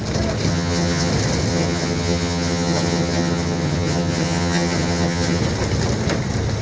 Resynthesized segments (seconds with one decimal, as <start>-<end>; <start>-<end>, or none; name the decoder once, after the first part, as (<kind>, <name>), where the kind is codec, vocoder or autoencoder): 0.5-1.1 (vocoder, HiFi-GAN); 1.5-5.4